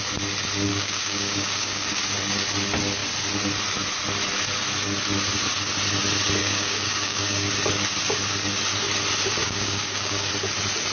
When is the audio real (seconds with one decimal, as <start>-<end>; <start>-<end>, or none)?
0.0-0.7; 2.0-6.4; 7.5-9.4; 10.3-10.9